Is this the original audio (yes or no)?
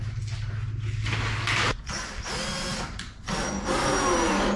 yes